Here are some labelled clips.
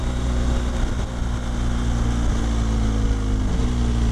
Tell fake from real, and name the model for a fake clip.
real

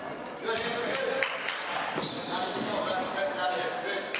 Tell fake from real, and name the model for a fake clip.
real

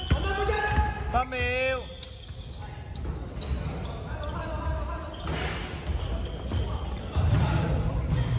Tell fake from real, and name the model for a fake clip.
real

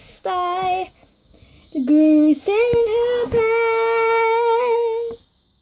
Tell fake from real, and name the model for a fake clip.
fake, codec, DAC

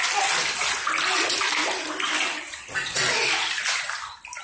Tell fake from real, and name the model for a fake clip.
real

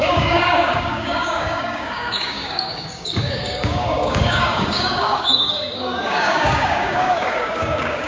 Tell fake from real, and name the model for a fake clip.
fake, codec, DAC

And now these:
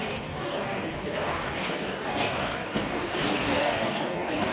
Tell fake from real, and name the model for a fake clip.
fake, codec, DAC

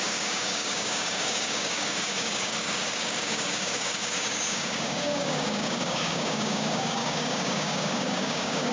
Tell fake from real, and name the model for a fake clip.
fake, codec, DAC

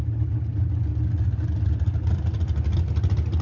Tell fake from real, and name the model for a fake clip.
real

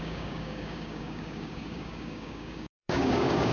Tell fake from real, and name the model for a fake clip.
fake, codec, DAC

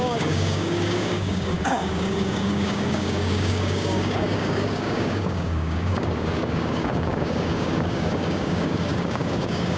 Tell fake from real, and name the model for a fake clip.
fake, codec, DAC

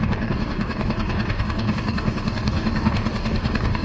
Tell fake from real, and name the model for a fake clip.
fake, codec, DAC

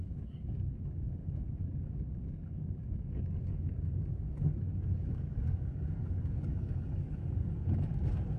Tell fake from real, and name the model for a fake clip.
fake, codec, DAC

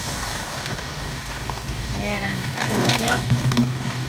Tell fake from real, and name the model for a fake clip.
fake, codec, DAC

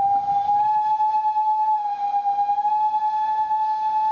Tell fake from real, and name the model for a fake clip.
real